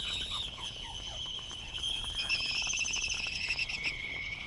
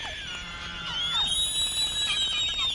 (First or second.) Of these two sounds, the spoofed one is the first